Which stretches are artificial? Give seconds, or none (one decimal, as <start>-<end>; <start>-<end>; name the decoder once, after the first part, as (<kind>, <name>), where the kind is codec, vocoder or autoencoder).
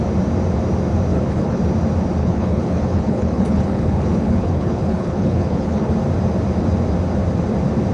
1.1-1.6 (codec, HILCodec); 2.2-5.9